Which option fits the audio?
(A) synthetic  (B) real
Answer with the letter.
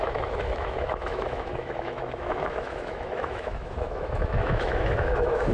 A